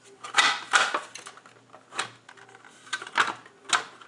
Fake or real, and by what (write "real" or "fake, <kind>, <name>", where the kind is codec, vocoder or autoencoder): real